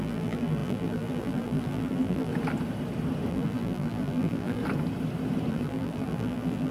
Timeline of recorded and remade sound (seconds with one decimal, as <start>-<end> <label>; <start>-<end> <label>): 0.0-2.3 remade; 2.3-3.3 recorded; 3.3-4.6 remade; 4.6-5.5 recorded; 5.5-6.7 remade